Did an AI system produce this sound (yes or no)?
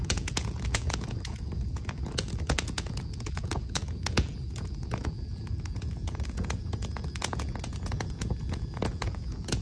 yes